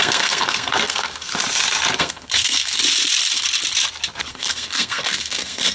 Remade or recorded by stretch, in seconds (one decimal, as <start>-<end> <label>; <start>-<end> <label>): 0.0-1.3 remade; 1.3-2.0 recorded; 2.0-2.8 remade; 2.8-4.3 recorded; 4.3-5.7 remade